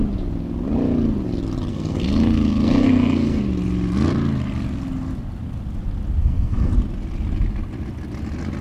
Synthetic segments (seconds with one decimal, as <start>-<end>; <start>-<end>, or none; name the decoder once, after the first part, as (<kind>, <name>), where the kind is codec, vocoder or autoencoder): 1.7-3.4 (codec, SNAC); 6.2-6.7